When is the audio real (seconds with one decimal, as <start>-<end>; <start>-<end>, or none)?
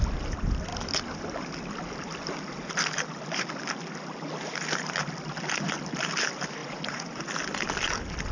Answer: 0.0-6.6; 7.2-8.3